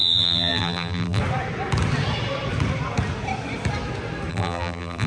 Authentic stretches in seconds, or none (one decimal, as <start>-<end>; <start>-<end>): 1.2-4.3

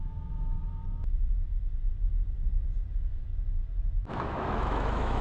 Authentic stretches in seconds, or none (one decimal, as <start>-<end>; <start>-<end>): 0.8-2.9; 3.3-4.1

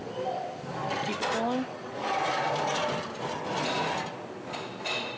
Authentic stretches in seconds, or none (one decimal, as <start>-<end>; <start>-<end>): 0.0-5.2